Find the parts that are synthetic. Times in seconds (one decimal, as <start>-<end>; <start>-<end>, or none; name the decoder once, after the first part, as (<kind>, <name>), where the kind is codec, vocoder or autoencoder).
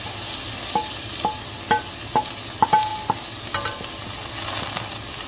none